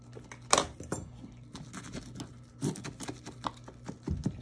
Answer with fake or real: real